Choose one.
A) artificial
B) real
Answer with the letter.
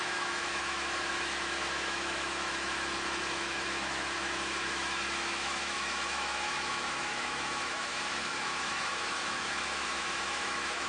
A